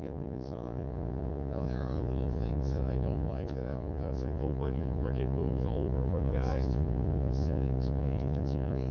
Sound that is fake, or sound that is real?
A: fake